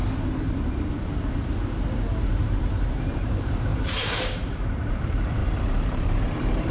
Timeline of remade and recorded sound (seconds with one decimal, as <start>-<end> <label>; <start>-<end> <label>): 0.0-2.2 recorded; 2.2-6.7 remade